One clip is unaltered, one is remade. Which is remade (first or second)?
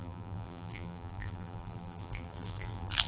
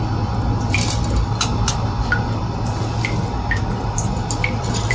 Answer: first